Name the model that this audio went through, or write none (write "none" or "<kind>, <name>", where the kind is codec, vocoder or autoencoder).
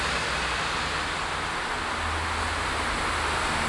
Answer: none